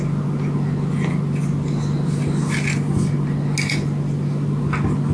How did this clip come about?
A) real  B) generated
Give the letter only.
A